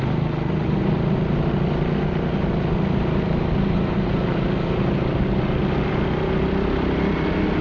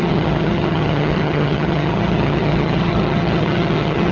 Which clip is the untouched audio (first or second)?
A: first